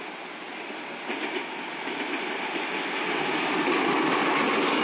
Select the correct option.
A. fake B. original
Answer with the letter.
B